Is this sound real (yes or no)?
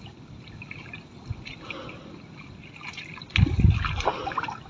yes